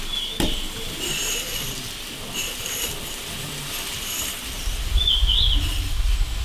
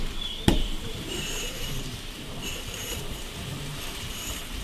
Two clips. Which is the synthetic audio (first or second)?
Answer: second